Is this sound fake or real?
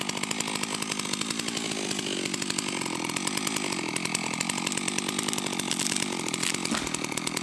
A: real